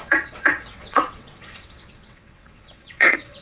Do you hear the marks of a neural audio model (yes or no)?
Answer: yes